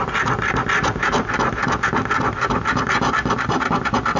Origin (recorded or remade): recorded